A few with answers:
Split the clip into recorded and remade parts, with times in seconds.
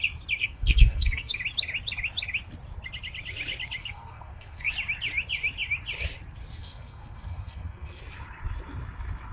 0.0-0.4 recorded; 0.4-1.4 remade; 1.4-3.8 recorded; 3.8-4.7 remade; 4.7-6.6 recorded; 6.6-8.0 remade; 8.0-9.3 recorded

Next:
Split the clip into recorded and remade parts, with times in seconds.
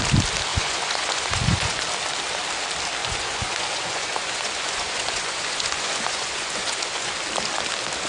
0.0-0.5 recorded; 0.5-1.8 remade; 1.8-3.0 recorded; 3.0-7.1 remade; 7.1-8.1 recorded